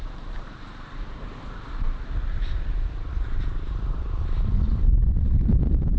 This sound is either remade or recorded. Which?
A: remade